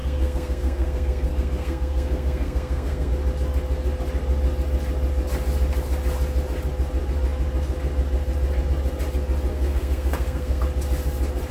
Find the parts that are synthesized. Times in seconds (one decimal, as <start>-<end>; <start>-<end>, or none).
0.0-3.1; 9.5-10.6